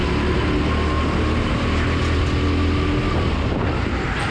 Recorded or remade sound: recorded